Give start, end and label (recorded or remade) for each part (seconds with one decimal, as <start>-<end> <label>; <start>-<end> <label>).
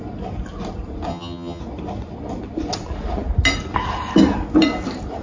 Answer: 0.0-1.1 recorded; 1.1-1.6 remade; 1.6-5.2 recorded